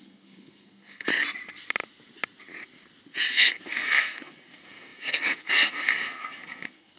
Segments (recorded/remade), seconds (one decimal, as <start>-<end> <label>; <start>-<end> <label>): 0.0-1.1 remade; 1.1-3.3 recorded; 3.3-7.0 remade